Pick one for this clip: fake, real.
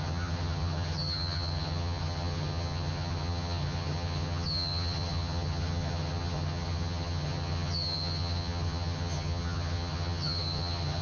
fake